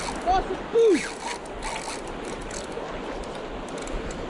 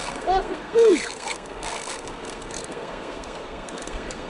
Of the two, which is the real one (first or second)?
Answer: first